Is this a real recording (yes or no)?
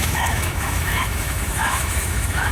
no